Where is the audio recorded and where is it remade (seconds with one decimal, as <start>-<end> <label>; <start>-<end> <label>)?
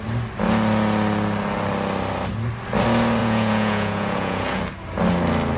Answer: 0.0-3.2 recorded; 3.2-4.6 remade; 4.6-5.6 recorded